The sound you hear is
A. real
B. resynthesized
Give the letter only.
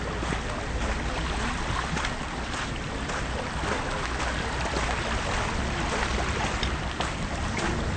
A